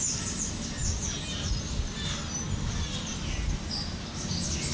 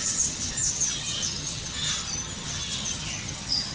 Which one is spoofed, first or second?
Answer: second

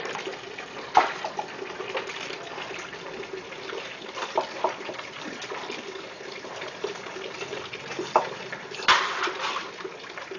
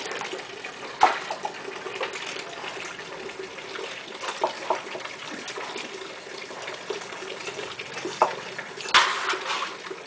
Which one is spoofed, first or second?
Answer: first